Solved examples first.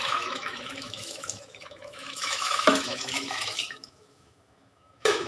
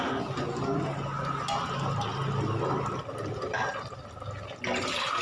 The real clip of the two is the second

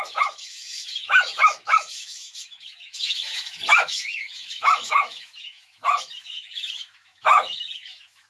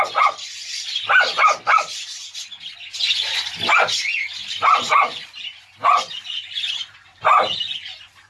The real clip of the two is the second